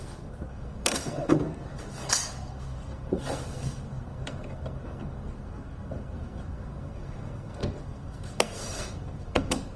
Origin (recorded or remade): remade